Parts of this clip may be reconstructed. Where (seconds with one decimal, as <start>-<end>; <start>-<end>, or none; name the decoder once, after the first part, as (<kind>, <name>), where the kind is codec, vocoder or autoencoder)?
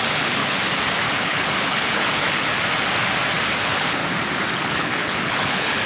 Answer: 0.0-0.4 (codec, HILCodec); 1.1-2.5; 3.6-4.0; 4.6-5.9